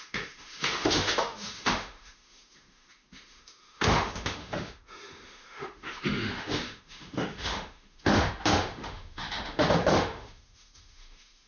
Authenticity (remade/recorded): remade